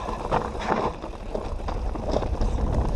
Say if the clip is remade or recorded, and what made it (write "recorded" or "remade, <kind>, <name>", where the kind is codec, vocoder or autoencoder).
recorded